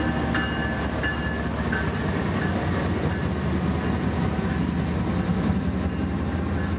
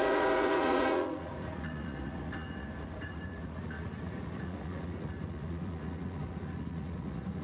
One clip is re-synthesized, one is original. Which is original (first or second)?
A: first